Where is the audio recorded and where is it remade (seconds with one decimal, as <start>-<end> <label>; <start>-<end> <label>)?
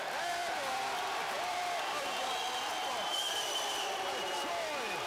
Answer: 0.0-0.4 recorded; 0.4-2.3 remade; 2.3-2.7 recorded; 2.7-4.5 remade; 4.5-5.1 recorded